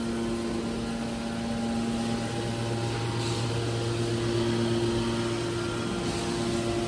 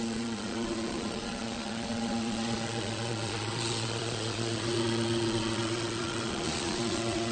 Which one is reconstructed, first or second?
second